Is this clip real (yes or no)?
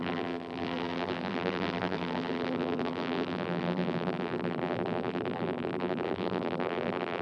no